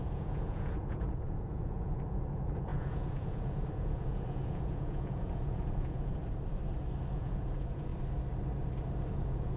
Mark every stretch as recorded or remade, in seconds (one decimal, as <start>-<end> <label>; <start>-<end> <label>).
0.0-6.2 remade; 6.2-7.1 recorded; 7.1-7.9 remade; 7.9-9.1 recorded; 9.1-9.6 remade